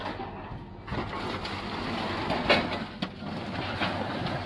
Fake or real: real